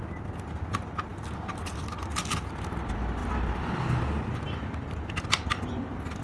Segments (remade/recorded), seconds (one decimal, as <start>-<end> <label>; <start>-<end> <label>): 0.0-6.2 recorded